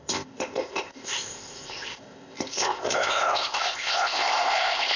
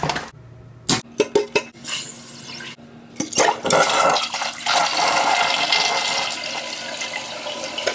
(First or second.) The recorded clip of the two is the second